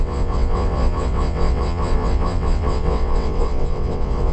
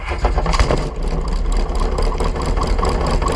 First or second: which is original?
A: second